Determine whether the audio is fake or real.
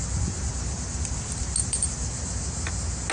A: real